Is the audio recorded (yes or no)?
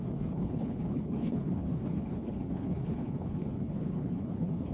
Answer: no